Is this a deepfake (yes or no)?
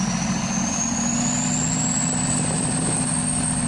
no